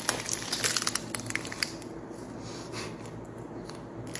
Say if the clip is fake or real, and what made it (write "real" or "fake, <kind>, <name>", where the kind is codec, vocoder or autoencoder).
real